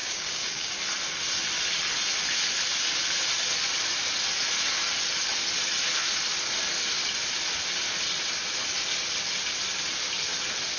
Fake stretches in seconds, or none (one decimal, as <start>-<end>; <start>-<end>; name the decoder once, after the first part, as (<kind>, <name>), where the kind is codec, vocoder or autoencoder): 0.0-0.7 (codec, DAC)